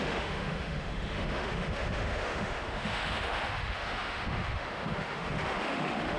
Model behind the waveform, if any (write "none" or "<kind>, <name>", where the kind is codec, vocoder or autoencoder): autoencoder, DAC-VAE